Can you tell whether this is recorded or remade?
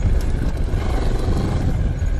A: recorded